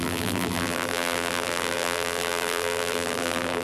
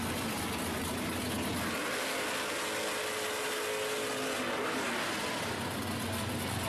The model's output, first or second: first